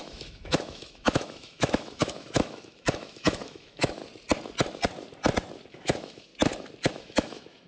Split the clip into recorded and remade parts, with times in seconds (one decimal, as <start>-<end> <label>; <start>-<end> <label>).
0.0-4.0 remade; 4.0-5.7 recorded; 5.7-6.3 remade; 6.3-6.9 recorded; 6.9-7.7 remade